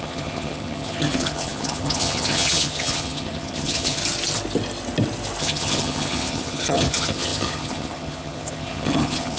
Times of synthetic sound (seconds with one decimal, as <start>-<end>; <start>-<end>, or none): 0.0-4.0; 5.4-9.4